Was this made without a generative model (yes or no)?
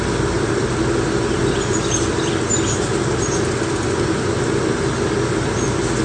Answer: yes